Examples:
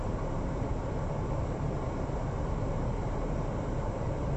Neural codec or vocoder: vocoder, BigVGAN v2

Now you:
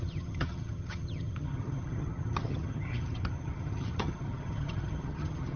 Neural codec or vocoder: vocoder, HiFi-GAN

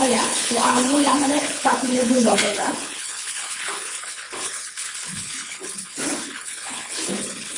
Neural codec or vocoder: codec, HILCodec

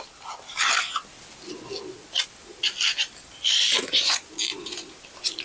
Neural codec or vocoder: none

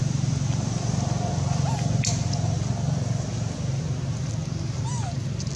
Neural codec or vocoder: none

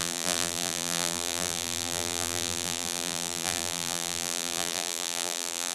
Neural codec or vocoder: vocoder, BigVGAN v2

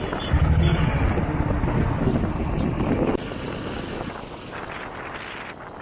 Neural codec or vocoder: none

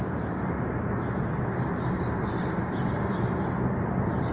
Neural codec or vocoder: vocoder, BigVGAN v2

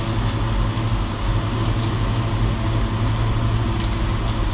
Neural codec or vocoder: none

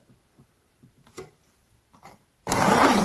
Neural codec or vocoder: vocoder, BigVGAN v2